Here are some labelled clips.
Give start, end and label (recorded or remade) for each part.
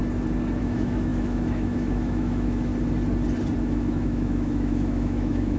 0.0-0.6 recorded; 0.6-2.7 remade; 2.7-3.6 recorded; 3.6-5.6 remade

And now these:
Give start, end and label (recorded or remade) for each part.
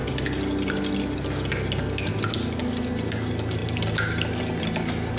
0.0-5.2 recorded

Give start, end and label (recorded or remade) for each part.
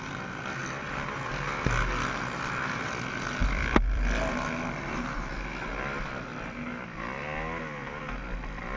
0.0-3.4 recorded; 3.4-4.3 remade; 4.3-8.8 recorded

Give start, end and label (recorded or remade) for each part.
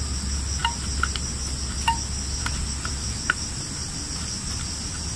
0.0-5.2 recorded